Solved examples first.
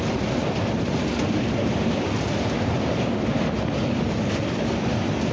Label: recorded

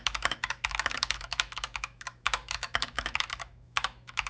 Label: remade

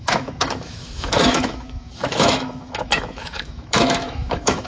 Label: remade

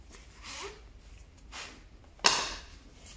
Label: recorded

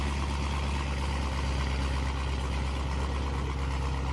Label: recorded